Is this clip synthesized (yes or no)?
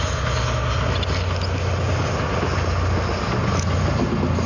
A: no